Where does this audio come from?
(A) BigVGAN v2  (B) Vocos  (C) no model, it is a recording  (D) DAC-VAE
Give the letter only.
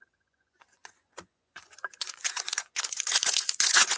B